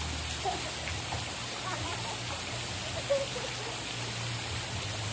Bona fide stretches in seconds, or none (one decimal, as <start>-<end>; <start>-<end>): 0.0-5.1